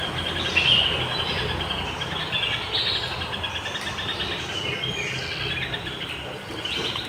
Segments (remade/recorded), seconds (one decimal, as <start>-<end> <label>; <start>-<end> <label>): 0.0-7.1 recorded